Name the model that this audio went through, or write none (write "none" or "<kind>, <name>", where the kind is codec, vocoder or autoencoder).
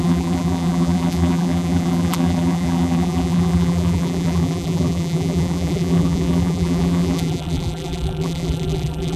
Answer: vocoder, BigVGAN v2